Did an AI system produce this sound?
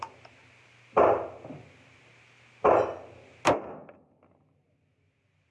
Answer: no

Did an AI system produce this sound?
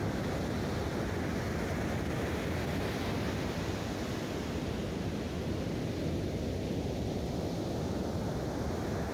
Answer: no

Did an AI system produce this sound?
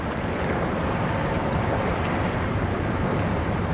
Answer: yes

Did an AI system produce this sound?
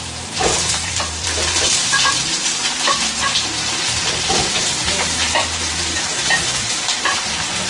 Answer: yes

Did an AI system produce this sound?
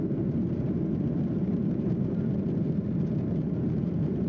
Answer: yes